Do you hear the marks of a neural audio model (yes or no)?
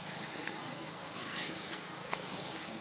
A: yes